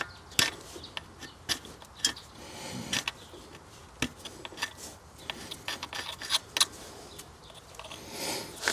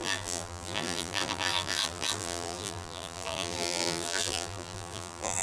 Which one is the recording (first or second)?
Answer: first